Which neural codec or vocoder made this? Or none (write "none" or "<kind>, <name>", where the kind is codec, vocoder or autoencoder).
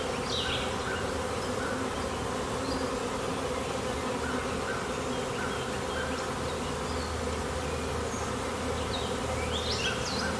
none